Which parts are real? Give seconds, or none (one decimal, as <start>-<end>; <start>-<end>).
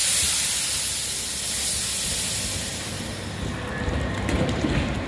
0.0-5.1